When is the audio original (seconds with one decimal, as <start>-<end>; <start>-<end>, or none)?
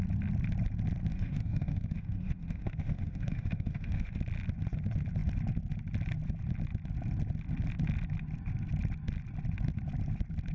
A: 0.0-1.1; 4.2-10.5